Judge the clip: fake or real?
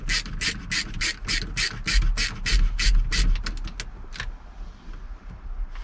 real